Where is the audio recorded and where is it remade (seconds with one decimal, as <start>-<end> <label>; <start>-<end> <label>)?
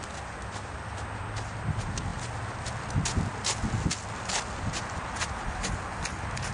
0.0-6.5 recorded